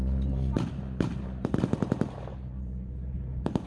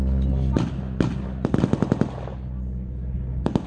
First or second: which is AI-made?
first